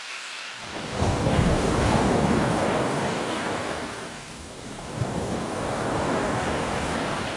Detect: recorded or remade remade